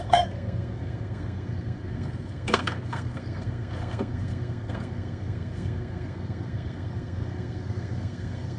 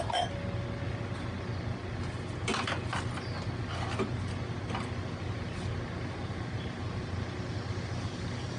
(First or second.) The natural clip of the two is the second